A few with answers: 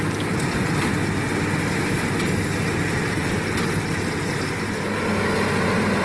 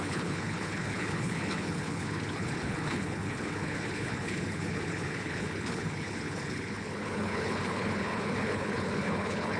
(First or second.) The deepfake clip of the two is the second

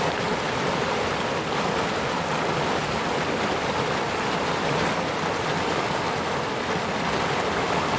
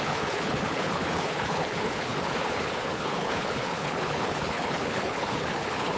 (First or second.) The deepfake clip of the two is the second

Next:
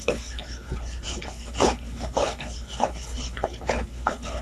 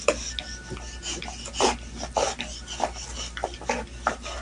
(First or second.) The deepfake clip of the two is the first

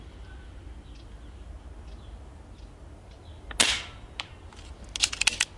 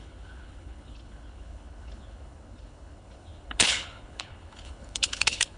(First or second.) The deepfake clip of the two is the second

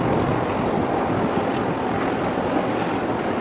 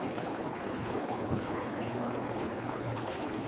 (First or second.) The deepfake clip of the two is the second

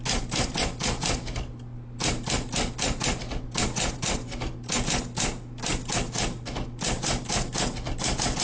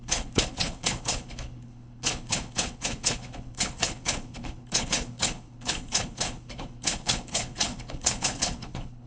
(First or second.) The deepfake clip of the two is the second